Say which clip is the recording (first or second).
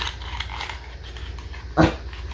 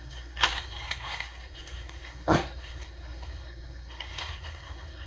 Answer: first